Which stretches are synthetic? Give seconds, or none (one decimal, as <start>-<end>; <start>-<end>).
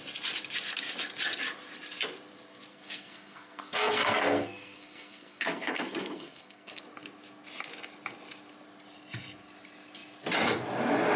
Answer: 2.7-6.8